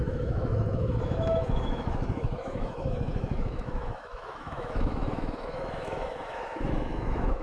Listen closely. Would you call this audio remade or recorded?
remade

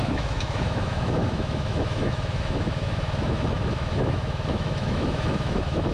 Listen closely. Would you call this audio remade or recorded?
remade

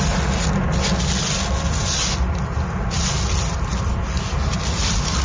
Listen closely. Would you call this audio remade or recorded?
recorded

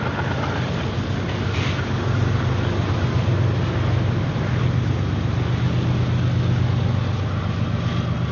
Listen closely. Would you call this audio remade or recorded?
recorded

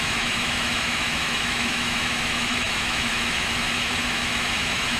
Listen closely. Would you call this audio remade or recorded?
remade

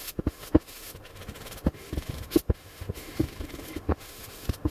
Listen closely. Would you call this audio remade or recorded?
remade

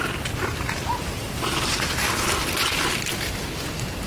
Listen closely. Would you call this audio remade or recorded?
recorded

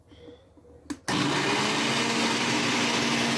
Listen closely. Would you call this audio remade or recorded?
recorded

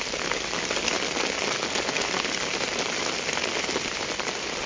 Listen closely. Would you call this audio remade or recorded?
recorded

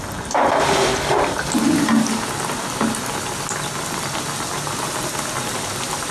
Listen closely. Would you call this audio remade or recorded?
recorded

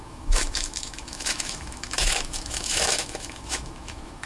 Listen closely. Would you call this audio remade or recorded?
remade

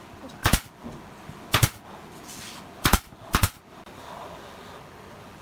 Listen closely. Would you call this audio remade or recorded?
recorded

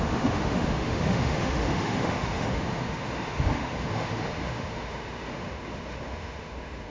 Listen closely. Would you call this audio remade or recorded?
remade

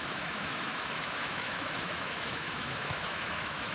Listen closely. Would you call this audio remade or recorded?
remade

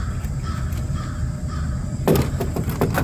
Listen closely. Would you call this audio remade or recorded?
recorded